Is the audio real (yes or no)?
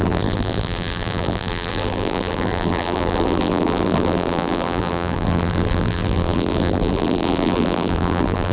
no